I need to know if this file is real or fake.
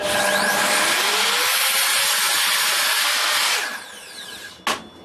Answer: real